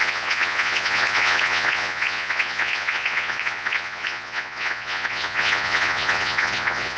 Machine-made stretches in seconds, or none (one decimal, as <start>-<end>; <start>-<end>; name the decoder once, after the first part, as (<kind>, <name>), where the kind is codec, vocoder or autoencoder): 0.0-7.0 (vocoder, Vocos)

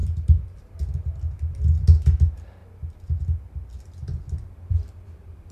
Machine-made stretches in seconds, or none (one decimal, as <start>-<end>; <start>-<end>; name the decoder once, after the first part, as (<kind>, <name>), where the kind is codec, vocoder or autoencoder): none

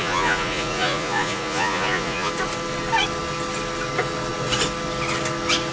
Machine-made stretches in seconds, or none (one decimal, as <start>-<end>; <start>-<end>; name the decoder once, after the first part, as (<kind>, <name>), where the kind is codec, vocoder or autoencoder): 0.0-2.3 (vocoder, Vocos)

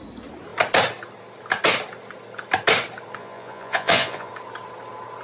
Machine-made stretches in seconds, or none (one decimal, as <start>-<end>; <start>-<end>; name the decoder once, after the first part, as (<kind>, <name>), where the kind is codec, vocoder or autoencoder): 3.2-4.3 (vocoder, Vocos)

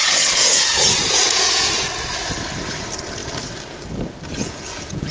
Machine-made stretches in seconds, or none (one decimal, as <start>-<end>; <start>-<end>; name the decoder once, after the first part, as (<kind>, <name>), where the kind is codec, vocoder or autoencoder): 0.0-1.9 (vocoder, Vocos); 4.4-5.1